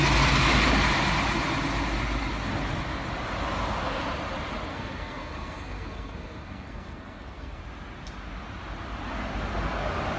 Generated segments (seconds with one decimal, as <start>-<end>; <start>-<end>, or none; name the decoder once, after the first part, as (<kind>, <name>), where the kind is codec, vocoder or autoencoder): 4.7-7.6 (codec, SNAC)